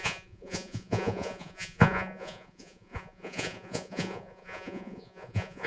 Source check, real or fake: fake